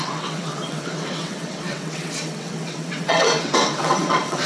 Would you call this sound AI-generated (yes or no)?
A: yes